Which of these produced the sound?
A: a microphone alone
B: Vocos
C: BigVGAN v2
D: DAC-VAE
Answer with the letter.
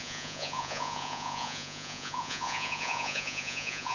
B